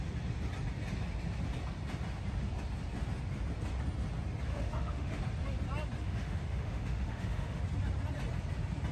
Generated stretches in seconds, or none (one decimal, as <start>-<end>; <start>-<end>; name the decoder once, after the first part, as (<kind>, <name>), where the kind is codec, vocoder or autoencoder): 4.5-5.2 (autoencoder, DAC-VAE); 6.0-7.6